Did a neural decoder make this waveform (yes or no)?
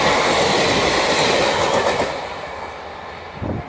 no